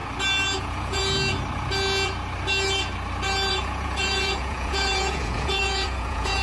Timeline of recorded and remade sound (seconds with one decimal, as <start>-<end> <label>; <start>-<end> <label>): 0.0-0.6 recorded; 0.6-1.0 remade; 1.0-3.5 recorded; 3.5-6.4 remade